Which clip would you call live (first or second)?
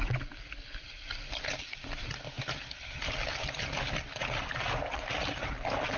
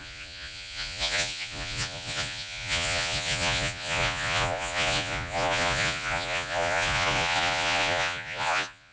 first